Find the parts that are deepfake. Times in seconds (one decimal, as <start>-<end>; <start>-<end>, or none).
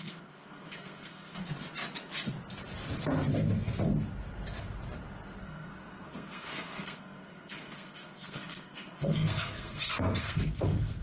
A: 0.0-1.4; 5.4-11.0